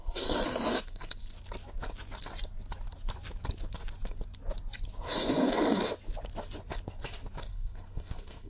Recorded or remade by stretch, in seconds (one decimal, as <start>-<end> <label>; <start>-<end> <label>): 0.0-1.1 remade; 1.1-7.5 recorded; 7.5-8.5 remade